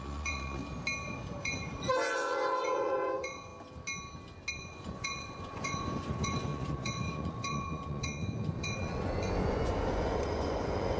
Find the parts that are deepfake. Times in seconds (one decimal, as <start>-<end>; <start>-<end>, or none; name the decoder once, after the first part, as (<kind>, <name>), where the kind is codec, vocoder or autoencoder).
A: 0.0-0.6 (vocoder, Vocos); 1.4-3.5; 4.5-11.0